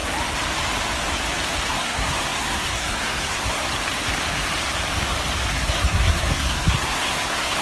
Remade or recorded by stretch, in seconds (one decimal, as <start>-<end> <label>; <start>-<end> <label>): 0.0-1.7 recorded; 1.7-3.7 remade; 3.7-5.5 recorded; 5.5-7.6 remade